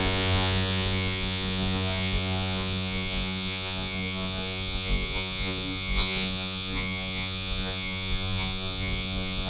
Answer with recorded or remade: remade